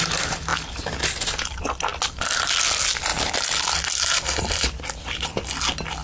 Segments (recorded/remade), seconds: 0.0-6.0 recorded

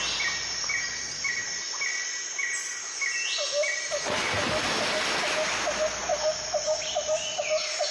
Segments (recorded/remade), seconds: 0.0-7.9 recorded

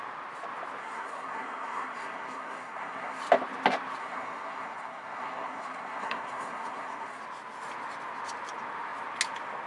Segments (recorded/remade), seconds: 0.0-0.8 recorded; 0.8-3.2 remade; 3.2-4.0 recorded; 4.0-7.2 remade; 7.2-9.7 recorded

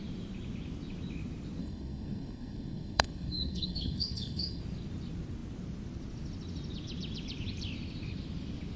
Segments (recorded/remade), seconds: 0.0-1.6 recorded; 1.6-4.6 remade; 4.6-8.8 recorded

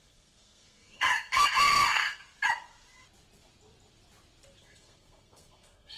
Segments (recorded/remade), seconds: 0.0-2.2 remade; 2.2-4.6 recorded; 4.6-6.0 remade

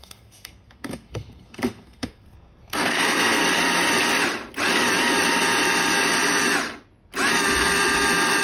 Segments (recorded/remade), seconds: 0.0-3.4 remade; 3.4-8.4 recorded